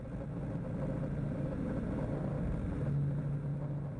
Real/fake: real